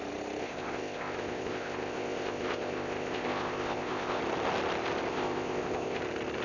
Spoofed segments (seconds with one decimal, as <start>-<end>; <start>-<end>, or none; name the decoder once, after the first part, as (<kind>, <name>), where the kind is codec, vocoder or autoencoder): 0.4-4.2 (codec, ZipCodec); 5.1-6.0

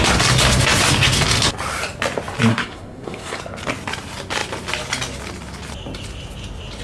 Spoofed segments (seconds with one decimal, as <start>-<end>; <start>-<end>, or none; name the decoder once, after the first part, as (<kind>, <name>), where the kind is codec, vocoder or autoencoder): 2.5-3.4 (codec, SNAC)

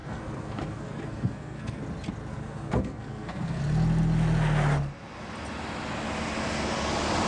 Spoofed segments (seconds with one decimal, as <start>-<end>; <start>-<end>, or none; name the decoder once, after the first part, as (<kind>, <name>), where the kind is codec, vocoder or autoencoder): 0.0-1.8 (codec, SNAC); 2.3-3.6

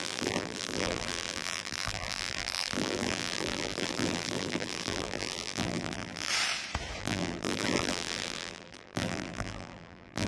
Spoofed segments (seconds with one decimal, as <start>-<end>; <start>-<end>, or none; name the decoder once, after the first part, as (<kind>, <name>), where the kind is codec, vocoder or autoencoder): 0.0-6.3 (vocoder, BigVGAN v2); 7.0-10.3

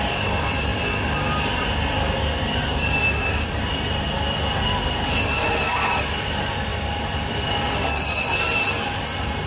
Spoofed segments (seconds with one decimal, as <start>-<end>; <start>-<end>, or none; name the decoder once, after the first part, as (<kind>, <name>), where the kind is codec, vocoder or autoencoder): none